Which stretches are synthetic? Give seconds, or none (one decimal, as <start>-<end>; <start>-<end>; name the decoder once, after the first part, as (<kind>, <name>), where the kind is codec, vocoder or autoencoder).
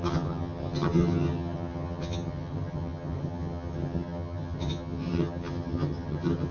0.0-6.5 (vocoder, HiFi-GAN)